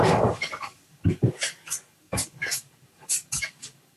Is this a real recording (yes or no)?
no